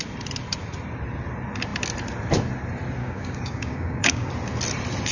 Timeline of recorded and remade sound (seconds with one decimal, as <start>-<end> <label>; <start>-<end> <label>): 0.0-3.0 recorded; 3.0-4.3 remade; 4.3-5.1 recorded